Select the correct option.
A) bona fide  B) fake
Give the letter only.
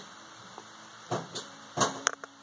A